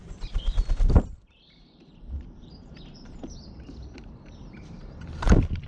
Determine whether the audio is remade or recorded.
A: remade